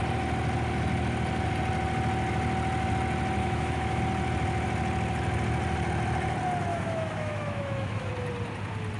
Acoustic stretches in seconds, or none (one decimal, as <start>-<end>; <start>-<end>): 0.0-3.4; 4.0-6.7; 8.1-9.0